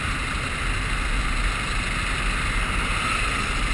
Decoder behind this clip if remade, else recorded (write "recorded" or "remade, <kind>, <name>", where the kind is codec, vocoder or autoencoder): recorded